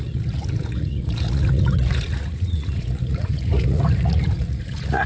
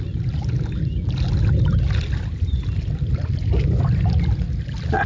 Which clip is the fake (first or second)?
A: first